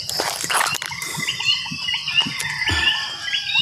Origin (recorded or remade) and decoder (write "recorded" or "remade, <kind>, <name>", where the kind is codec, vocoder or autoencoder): remade, vocoder, BigVGAN v2